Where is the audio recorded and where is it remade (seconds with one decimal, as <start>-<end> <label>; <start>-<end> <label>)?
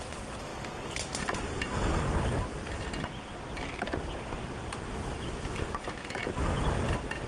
0.0-0.5 remade; 0.5-4.9 recorded; 4.9-6.2 remade; 6.2-7.3 recorded